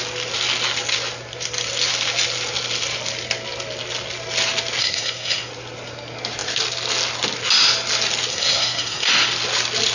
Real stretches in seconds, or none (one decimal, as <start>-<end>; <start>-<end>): 0.0-4.8; 5.5-8.3; 9.1-9.9